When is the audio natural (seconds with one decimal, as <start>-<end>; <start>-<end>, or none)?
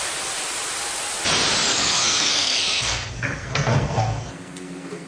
0.0-1.7